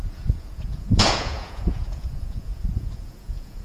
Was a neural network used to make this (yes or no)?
yes